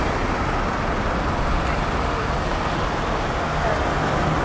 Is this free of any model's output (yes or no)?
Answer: yes